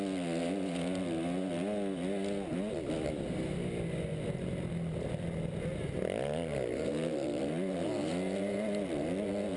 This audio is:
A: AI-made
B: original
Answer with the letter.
B